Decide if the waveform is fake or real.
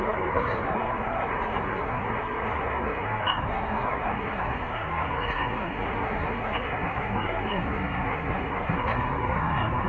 fake